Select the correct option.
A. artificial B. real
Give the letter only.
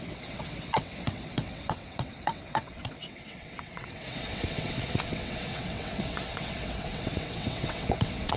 A